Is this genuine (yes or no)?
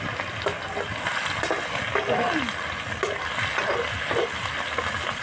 yes